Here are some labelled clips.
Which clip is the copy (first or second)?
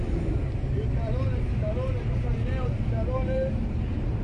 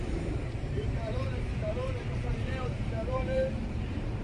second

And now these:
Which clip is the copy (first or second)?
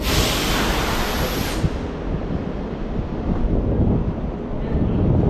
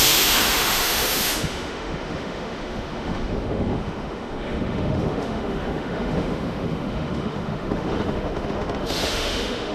second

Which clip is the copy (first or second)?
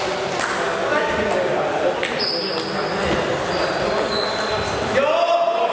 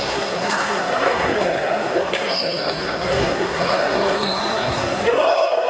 second